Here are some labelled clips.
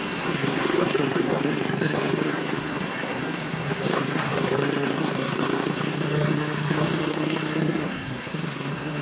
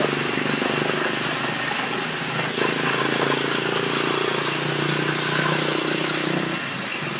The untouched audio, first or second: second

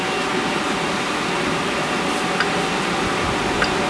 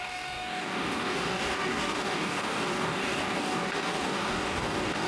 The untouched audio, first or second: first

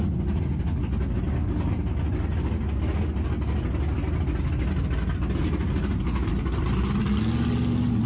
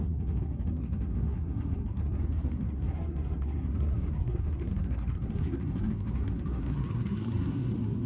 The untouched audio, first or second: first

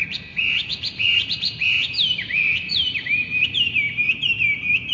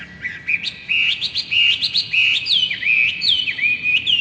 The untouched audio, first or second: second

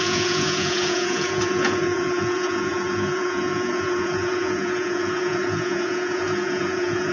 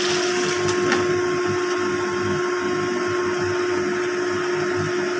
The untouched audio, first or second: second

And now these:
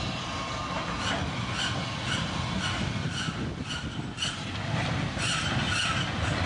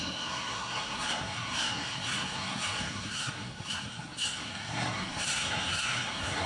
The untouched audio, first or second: first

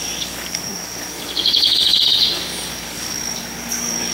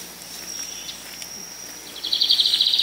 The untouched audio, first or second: second